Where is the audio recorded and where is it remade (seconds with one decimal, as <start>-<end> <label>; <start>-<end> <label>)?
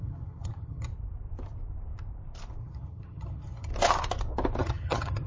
0.0-0.9 remade; 0.9-2.6 recorded; 2.6-3.7 remade; 3.7-4.6 recorded; 4.6-5.3 remade